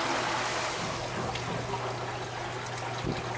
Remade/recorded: recorded